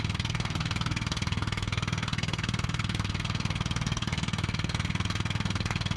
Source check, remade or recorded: remade